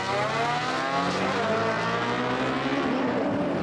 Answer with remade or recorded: recorded